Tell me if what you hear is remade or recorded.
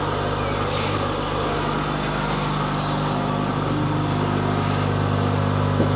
recorded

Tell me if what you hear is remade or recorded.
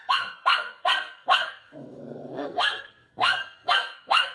remade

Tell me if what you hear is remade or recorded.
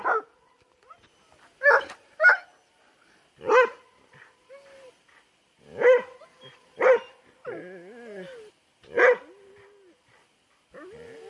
recorded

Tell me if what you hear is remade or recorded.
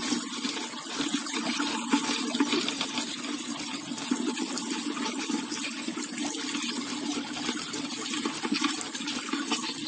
recorded